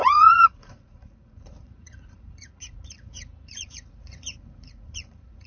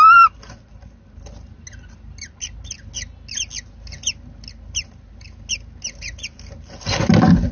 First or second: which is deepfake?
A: first